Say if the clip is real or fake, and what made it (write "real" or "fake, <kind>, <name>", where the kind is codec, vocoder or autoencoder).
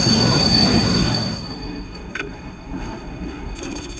fake, codec, SNAC